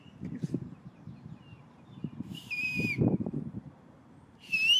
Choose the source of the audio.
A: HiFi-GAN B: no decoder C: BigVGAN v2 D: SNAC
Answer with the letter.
C